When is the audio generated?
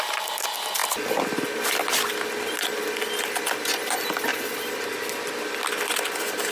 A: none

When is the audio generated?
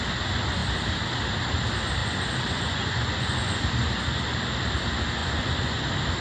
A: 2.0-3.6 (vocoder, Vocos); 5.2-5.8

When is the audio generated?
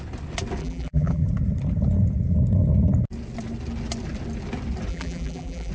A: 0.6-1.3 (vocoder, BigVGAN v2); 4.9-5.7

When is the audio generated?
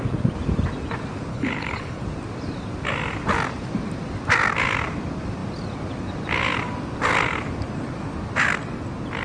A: 1.3-2.0 (codec, HILCodec)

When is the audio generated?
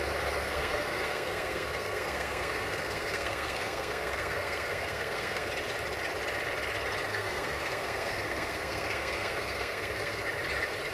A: 0.4-5.5 (codec, SNAC); 7.1-10.2